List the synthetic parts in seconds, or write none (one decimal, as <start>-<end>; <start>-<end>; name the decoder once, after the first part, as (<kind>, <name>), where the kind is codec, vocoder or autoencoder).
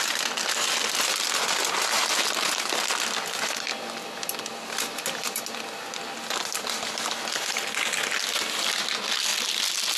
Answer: none